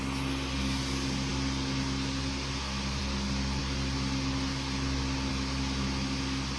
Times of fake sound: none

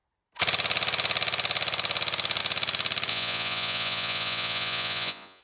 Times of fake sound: 3.1-5.4

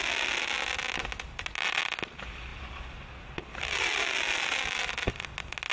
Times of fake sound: none

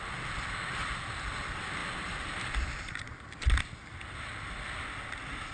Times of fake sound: none

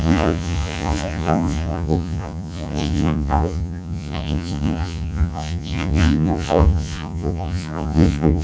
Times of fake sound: 0.0-8.4

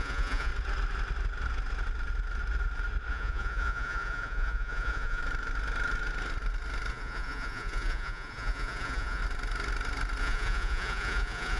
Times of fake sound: 0.0-0.5; 3.1-5.2; 6.9-9.2; 10.2-11.6